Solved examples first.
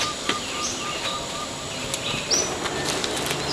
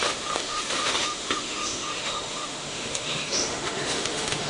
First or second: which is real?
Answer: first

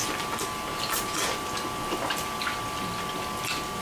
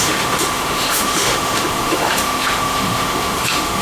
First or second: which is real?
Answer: first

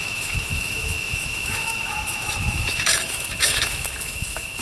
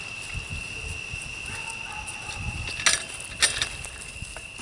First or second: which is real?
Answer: second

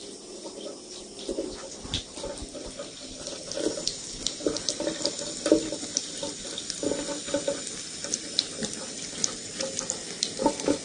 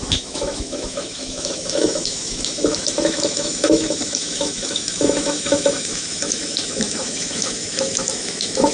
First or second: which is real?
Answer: first